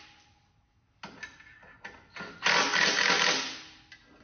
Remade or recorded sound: recorded